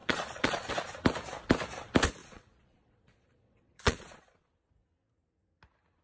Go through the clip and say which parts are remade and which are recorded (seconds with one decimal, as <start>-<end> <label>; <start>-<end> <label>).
0.0-0.7 remade; 0.7-2.2 recorded; 2.2-4.5 remade; 4.5-6.0 recorded